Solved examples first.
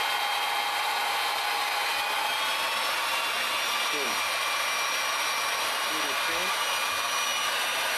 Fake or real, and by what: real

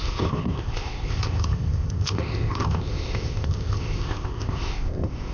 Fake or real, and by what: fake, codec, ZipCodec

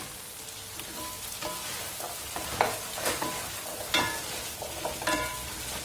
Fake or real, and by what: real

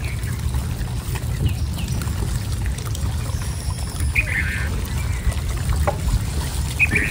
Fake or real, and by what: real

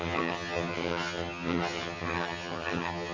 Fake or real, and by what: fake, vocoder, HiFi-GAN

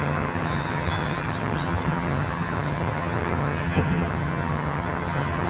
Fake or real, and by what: fake, vocoder, HiFi-GAN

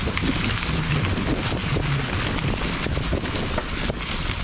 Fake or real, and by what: real